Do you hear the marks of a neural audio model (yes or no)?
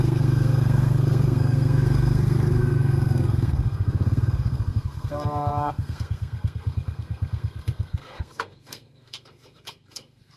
yes